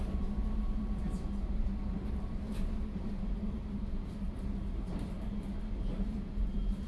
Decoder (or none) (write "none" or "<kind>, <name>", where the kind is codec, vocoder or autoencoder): vocoder, BigVGAN v2